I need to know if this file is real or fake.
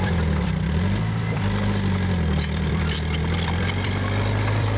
fake